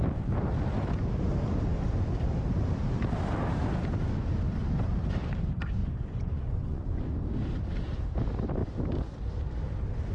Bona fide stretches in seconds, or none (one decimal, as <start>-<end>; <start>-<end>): 0.0-5.8; 7.0-10.1